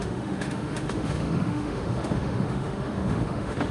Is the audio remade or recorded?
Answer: remade